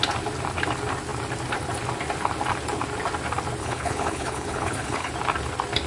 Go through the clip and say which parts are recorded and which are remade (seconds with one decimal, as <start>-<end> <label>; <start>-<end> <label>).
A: 0.0-3.6 recorded; 3.6-5.1 remade; 5.1-5.9 recorded